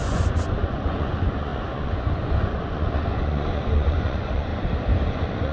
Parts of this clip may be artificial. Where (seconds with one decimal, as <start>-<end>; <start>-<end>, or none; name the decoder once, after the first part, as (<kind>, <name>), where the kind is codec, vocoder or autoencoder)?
0.0-4.5 (vocoder, Vocos); 5.1-5.5